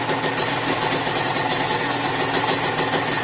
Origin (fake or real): real